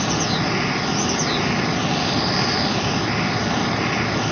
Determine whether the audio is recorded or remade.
recorded